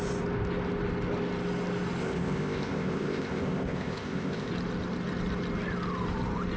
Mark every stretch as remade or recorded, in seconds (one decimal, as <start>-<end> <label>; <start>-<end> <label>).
0.0-2.0 recorded; 2.0-4.5 remade; 4.5-6.6 recorded